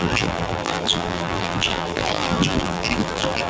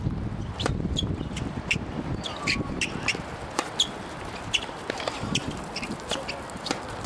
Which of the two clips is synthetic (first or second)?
first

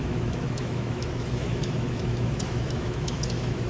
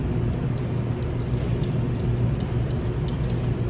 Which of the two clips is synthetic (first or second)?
first